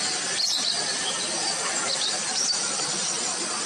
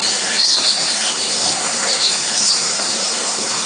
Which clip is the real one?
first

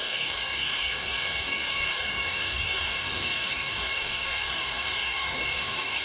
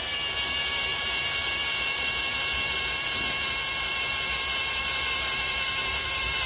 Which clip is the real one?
second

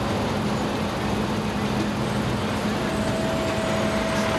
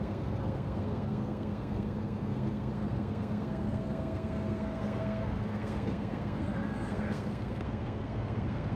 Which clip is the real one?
first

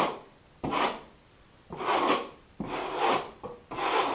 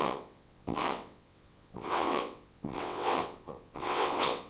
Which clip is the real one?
first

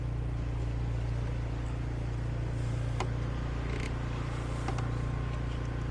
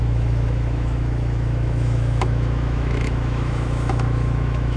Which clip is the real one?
first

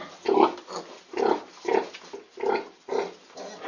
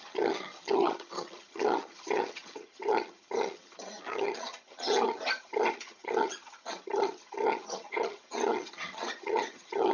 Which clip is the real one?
first